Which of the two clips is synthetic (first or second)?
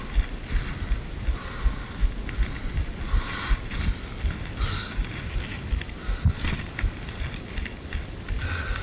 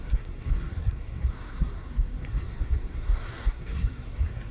second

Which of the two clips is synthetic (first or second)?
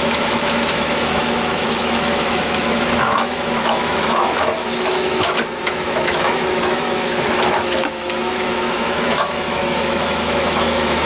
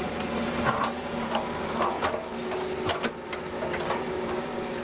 first